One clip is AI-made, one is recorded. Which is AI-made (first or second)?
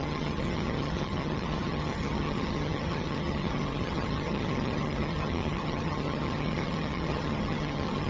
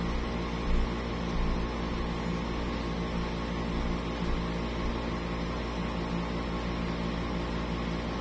first